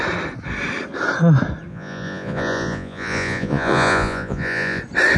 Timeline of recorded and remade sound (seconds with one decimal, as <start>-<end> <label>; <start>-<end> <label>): 0.0-1.7 recorded; 1.7-4.8 remade; 4.8-5.2 recorded